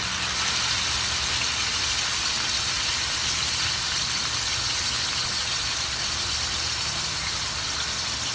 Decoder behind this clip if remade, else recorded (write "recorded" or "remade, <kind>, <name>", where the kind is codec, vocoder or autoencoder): recorded